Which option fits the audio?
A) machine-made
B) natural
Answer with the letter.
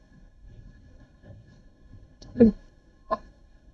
A